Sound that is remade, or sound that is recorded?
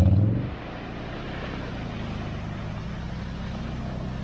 recorded